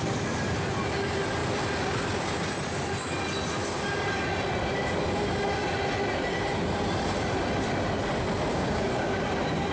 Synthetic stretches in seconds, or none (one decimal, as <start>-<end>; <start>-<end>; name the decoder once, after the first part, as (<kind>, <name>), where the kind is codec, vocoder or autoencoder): 8.5-9.2 (codec, DAC)